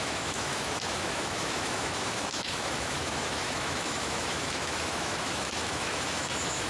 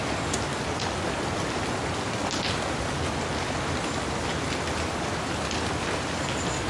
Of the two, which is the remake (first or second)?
first